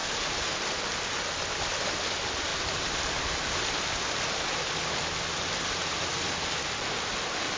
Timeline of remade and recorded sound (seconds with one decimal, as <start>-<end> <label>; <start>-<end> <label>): 0.0-7.6 recorded